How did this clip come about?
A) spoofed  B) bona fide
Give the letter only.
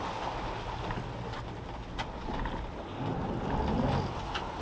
B